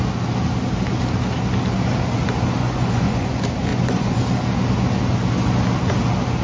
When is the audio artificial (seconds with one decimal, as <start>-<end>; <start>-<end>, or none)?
2.6-3.3; 3.7-4.2